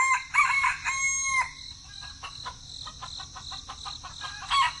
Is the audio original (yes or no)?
yes